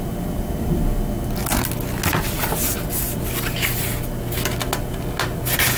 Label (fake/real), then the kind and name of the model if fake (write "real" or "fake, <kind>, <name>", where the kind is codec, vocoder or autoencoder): real